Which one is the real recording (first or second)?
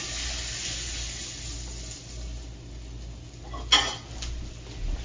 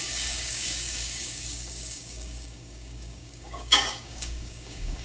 first